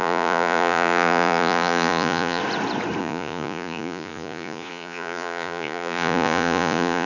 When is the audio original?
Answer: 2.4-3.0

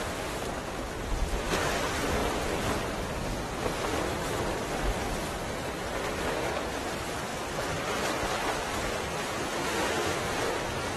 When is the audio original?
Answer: 0.0-9.6; 10.3-11.0

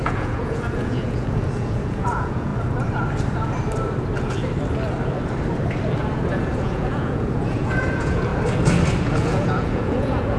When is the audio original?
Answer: 2.5-6.3; 8.3-9.0